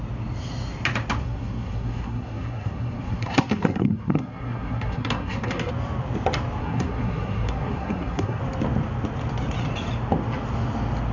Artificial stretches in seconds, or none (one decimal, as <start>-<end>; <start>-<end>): 1.2-5.7; 6.6-8.4

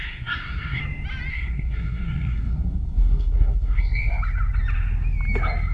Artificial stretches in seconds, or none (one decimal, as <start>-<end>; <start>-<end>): 0.0-0.8; 1.3-4.1

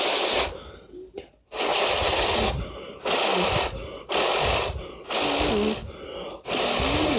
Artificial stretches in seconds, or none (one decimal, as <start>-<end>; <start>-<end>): none

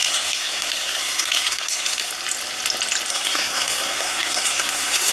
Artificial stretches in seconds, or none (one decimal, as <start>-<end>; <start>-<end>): 0.0-2.1; 3.1-5.1